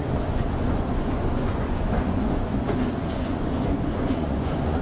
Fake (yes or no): yes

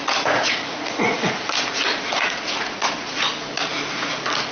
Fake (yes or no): yes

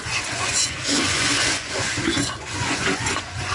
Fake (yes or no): yes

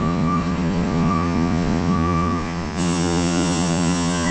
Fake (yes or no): yes